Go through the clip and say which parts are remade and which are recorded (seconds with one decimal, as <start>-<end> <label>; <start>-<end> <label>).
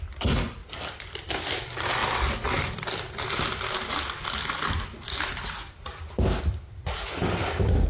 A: 0.0-7.9 recorded